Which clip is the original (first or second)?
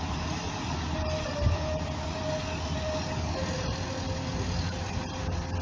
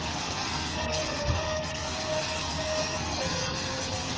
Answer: first